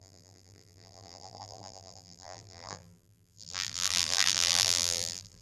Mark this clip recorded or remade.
remade